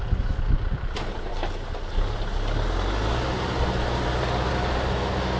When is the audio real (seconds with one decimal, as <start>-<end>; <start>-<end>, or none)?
0.0-5.4